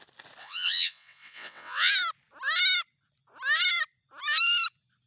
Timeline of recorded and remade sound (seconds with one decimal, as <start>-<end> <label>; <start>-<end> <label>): 0.0-0.4 recorded; 0.4-1.9 remade; 1.9-5.1 recorded